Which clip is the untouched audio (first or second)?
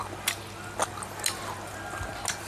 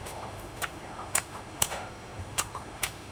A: first